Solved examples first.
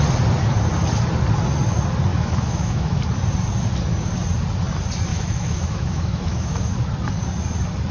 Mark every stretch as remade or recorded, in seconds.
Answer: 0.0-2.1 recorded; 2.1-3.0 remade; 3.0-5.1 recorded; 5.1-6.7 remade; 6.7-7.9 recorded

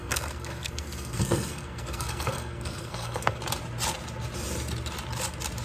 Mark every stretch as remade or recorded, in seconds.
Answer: 0.0-3.4 remade; 3.4-5.6 recorded

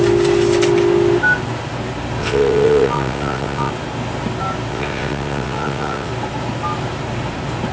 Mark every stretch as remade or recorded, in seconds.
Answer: 0.0-2.2 recorded; 2.2-3.7 remade; 3.7-4.7 recorded; 4.7-6.1 remade; 6.1-7.7 recorded

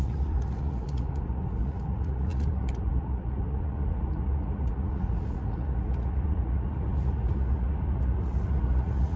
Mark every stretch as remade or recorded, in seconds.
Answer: 0.0-9.2 remade

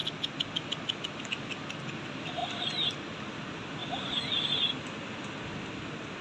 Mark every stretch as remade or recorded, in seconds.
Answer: 0.0-2.4 recorded; 2.4-3.2 remade; 3.2-3.8 recorded; 3.8-4.6 remade; 4.6-6.2 recorded

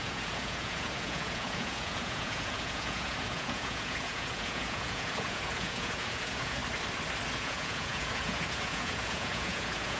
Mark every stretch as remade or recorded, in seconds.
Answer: 0.0-6.6 remade; 6.6-7.4 recorded; 7.4-10.0 remade

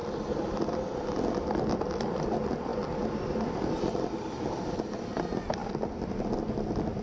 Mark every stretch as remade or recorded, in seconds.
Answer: 0.0-7.0 recorded

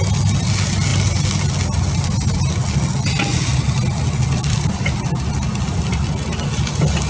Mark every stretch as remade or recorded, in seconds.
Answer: 0.0-7.1 recorded